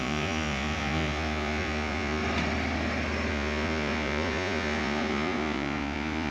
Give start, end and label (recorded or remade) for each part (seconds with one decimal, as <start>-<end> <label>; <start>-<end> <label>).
0.0-2.2 remade; 2.2-3.3 recorded; 3.3-6.3 remade